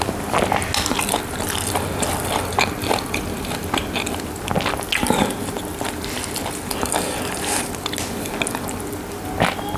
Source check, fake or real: real